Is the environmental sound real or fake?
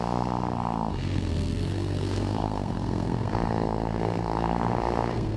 fake